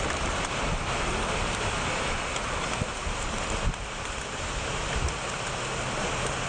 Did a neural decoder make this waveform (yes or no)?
no